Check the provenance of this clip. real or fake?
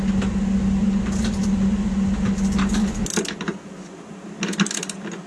real